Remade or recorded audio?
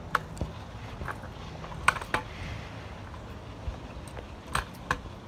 recorded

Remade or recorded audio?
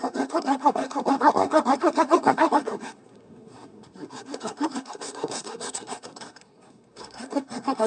remade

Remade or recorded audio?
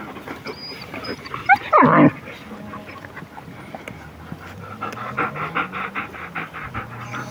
recorded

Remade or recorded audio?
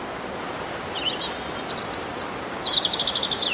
recorded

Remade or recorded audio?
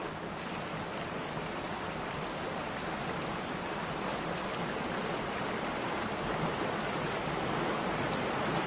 recorded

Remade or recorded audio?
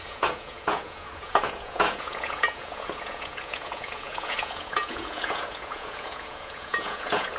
remade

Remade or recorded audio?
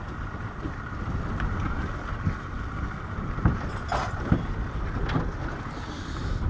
recorded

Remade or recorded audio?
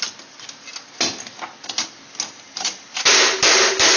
recorded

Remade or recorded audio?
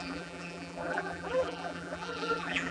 remade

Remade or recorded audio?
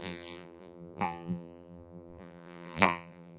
remade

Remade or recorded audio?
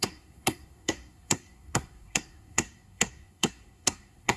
remade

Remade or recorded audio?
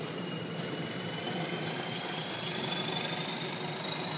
remade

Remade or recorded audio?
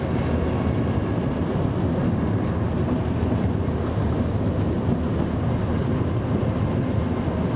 recorded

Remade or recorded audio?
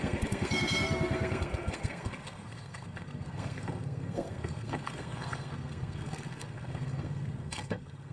remade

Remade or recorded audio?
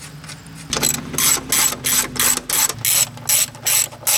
recorded